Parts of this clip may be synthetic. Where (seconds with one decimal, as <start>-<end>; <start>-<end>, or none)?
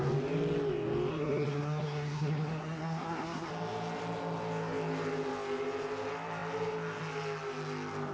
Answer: 1.1-3.5